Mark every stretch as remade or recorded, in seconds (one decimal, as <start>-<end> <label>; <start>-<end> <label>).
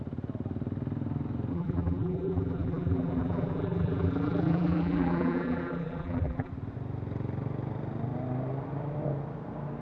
0.0-1.5 recorded; 1.5-6.5 remade; 6.5-9.8 recorded